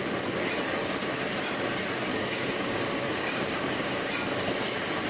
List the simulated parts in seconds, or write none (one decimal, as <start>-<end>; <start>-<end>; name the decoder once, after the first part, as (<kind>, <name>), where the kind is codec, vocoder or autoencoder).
2.1-4.1 (codec, DAC)